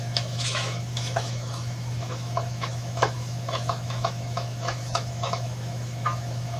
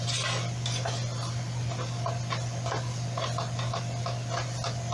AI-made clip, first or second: first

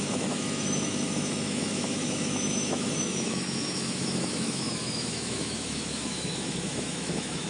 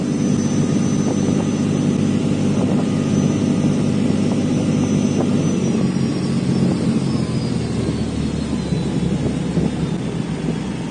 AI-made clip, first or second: first